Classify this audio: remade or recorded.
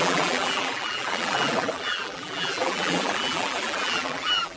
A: remade